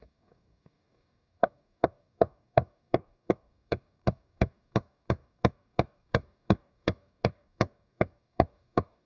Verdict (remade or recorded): remade